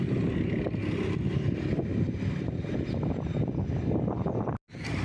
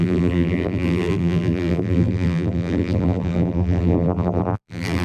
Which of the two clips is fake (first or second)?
second